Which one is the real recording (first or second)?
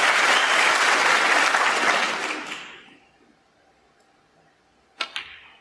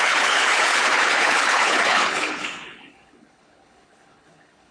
first